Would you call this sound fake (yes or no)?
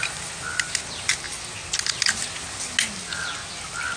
no